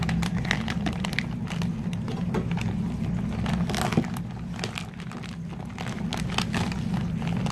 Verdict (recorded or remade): recorded